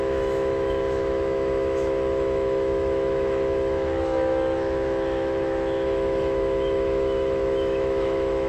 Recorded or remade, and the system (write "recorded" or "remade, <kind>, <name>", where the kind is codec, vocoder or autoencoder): remade, autoencoder, DAC-VAE